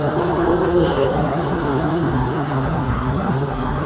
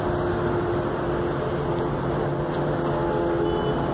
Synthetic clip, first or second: first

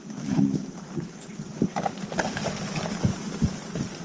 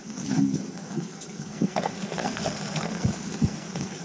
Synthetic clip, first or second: second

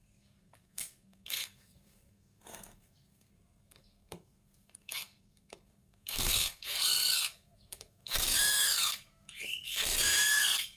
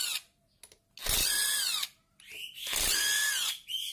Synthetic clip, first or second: first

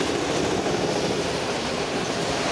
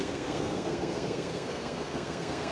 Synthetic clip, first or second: second